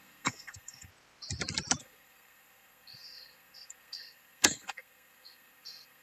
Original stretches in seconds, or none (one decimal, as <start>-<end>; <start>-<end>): 0.9-1.8